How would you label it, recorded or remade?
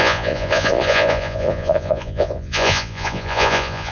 remade